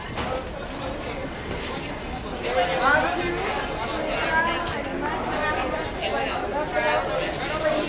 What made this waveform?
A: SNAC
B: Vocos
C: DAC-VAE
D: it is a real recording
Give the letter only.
D